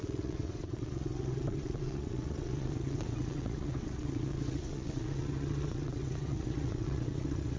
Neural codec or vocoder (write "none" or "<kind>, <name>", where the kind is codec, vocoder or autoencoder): vocoder, WaveNeXt